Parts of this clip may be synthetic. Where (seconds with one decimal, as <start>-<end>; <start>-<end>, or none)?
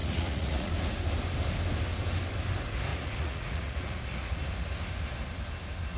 0.0-0.7; 2.9-4.4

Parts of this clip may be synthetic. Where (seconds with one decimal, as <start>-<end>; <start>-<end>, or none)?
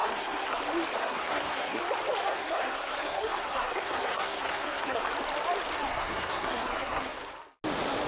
0.0-0.6; 1.0-1.8; 2.2-5.0; 5.9-7.3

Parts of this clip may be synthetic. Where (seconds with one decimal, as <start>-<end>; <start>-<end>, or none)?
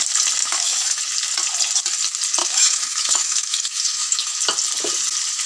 0.4-1.0; 2.4-4.4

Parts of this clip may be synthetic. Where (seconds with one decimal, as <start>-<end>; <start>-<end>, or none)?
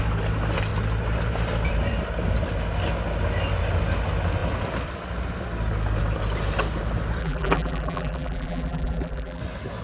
7.2-9.4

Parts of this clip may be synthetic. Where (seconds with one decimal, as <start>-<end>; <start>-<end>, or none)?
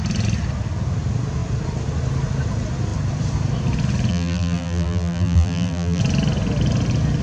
4.1-6.0